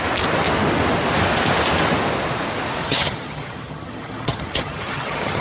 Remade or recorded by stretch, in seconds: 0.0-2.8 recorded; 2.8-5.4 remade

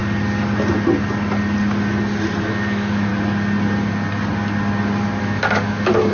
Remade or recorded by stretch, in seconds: 0.0-2.4 recorded; 2.4-3.1 remade; 3.1-5.2 recorded; 5.2-6.1 remade

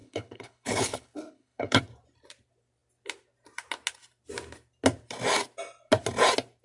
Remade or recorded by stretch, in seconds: 0.0-1.8 remade; 1.8-6.6 recorded

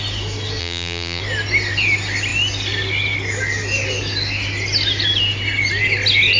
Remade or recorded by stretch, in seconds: 0.0-0.6 recorded; 0.6-1.2 remade; 1.2-6.4 recorded

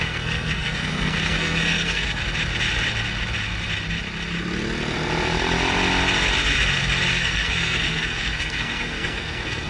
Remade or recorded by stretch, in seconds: 0.0-2.2 remade; 2.2-7.1 recorded; 7.1-9.7 remade